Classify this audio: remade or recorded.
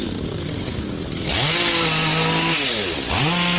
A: recorded